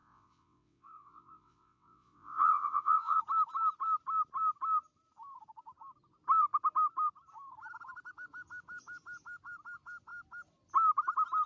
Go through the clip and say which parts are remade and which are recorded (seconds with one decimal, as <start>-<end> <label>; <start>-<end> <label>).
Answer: 0.0-3.2 remade; 3.2-11.5 recorded